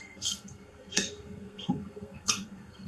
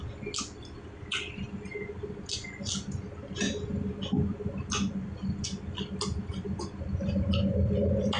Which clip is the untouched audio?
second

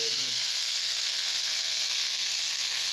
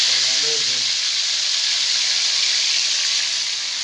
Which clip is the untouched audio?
second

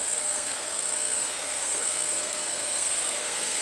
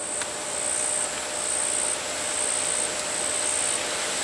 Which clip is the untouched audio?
second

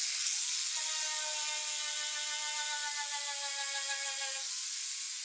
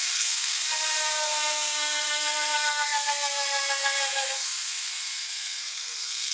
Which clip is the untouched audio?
first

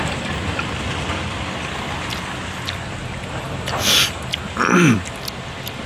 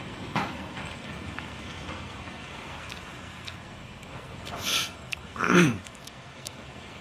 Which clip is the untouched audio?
first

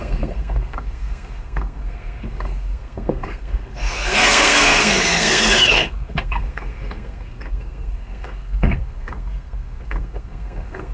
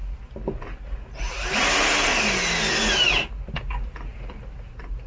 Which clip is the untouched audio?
second